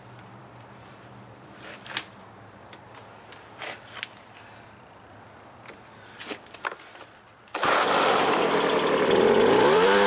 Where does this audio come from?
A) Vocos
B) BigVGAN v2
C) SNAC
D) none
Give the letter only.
B